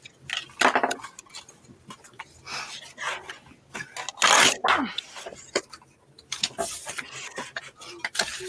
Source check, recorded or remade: recorded